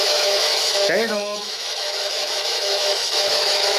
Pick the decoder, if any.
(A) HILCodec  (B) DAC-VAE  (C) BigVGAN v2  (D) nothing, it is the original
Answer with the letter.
B